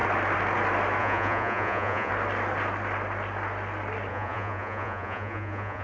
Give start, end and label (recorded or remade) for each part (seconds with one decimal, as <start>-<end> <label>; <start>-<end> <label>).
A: 0.0-1.0 recorded; 1.0-2.1 remade; 2.1-4.1 recorded; 4.1-5.8 remade